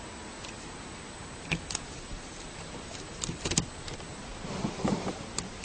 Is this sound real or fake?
real